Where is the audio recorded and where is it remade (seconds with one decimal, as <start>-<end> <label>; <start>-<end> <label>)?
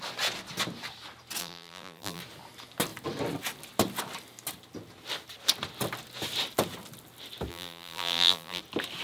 0.0-1.4 recorded; 1.4-2.2 remade; 2.2-7.5 recorded; 7.5-8.6 remade; 8.6-9.0 recorded